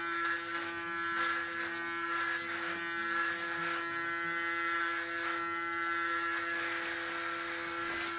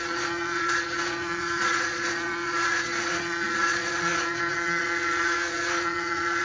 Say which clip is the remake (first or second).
second